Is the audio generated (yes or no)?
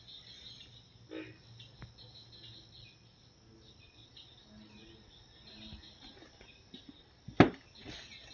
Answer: no